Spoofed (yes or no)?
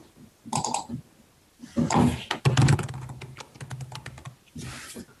no